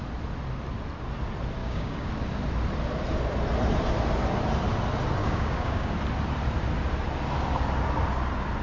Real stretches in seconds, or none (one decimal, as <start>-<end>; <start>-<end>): 0.0-1.6; 2.1-5.2; 5.9-8.6